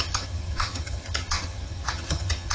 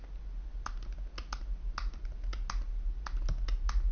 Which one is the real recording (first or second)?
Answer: second